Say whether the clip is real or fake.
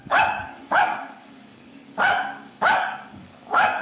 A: fake